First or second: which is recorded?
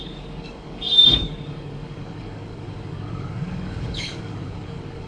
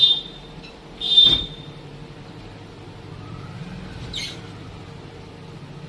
second